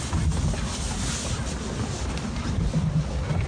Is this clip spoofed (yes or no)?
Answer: no